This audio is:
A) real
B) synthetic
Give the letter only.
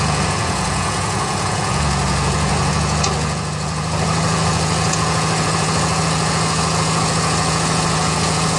B